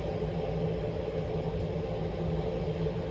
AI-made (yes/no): no